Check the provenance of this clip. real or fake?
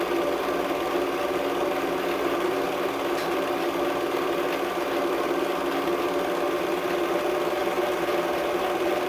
real